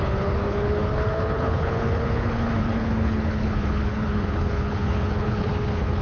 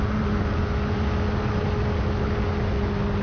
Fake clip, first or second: first